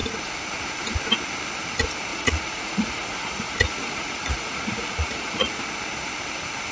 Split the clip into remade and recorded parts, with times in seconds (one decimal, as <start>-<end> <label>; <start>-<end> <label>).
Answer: 0.0-2.1 recorded; 2.1-5.6 remade; 5.6-6.7 recorded